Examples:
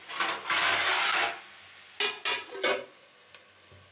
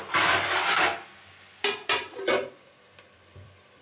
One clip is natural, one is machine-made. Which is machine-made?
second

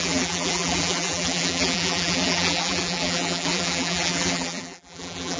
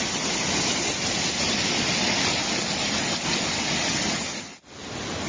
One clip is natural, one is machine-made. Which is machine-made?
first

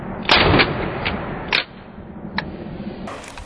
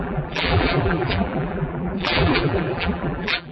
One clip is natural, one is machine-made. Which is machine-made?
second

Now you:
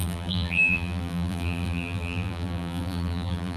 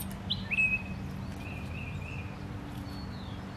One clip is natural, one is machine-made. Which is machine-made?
first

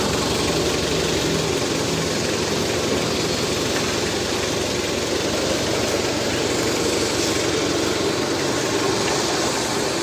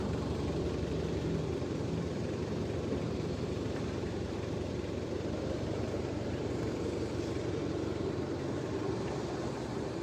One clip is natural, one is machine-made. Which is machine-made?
second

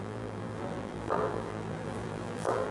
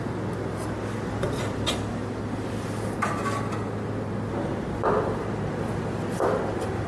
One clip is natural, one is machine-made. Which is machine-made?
first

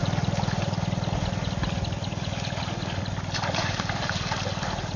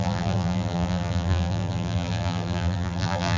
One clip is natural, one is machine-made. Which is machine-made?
second